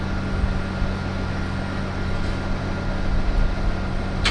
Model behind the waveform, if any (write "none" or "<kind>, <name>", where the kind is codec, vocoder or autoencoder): none